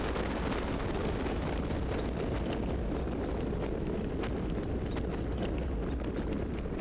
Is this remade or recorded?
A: recorded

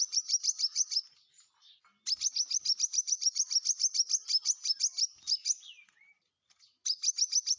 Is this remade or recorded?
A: recorded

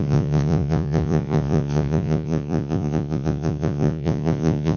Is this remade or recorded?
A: remade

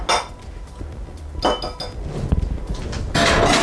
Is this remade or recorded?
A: recorded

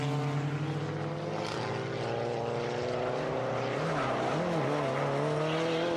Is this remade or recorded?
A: recorded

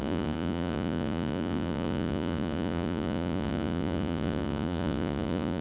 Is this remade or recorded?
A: remade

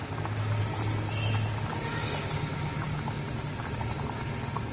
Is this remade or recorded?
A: recorded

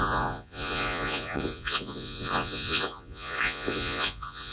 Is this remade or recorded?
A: remade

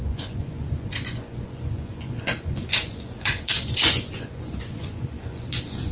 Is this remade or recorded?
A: remade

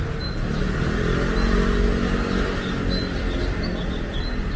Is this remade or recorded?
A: recorded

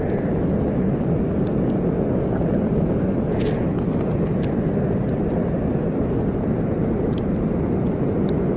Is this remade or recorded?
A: recorded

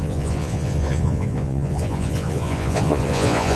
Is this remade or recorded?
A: remade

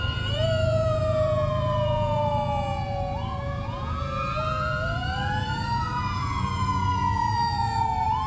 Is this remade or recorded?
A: remade